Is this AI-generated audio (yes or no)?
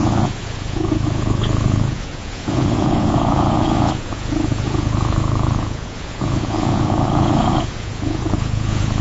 yes